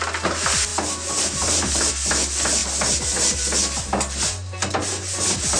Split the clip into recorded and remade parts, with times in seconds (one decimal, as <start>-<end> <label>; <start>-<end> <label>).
0.0-5.6 recorded